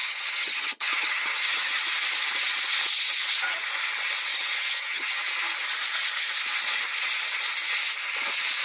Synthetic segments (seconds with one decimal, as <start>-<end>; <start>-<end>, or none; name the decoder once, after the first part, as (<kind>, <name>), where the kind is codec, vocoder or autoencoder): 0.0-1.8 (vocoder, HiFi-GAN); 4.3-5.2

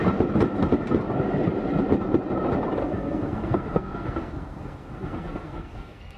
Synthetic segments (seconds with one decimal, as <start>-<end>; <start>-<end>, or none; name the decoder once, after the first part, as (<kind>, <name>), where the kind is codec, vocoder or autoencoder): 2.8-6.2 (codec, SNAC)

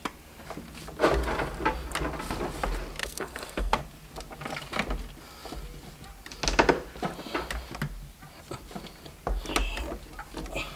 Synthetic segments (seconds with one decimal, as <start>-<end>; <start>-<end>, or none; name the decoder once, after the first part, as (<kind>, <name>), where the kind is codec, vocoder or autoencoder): 3.0-3.8 (codec, SNAC)